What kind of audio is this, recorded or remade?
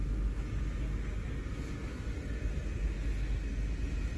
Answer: recorded